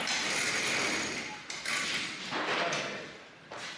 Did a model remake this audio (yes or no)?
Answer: no